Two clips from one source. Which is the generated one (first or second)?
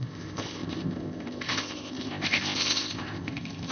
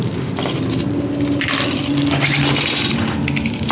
first